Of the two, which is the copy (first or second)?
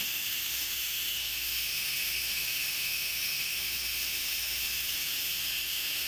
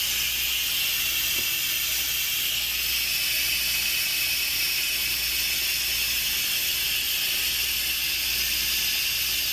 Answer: first